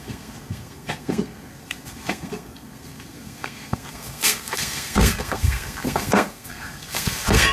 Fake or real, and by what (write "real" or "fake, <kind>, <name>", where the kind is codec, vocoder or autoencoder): fake, codec, SNAC